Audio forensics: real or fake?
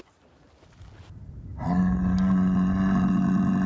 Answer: real